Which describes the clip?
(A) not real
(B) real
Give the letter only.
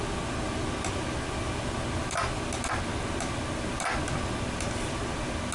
B